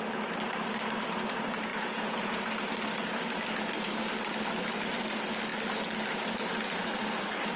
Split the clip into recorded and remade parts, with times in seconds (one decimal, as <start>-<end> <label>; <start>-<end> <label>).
0.0-1.7 recorded; 1.7-2.5 remade; 2.5-7.6 recorded